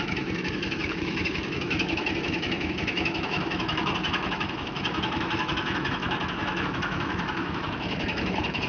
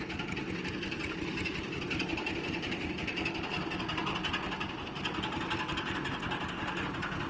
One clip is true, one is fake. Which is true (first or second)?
second